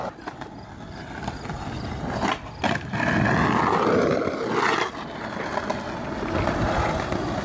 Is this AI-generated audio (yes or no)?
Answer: no